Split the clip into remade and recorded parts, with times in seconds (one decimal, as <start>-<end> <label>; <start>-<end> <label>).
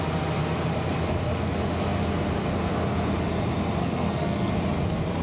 0.0-3.8 recorded; 3.8-4.5 remade; 4.5-5.2 recorded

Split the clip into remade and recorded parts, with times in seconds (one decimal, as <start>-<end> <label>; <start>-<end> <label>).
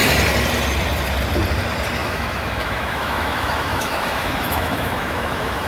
0.0-2.0 recorded; 2.0-5.7 remade